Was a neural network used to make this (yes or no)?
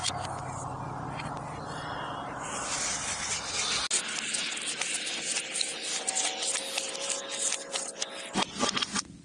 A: no